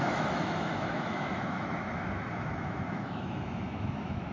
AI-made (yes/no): yes